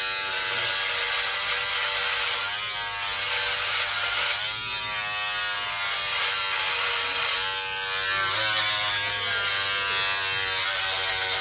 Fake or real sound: real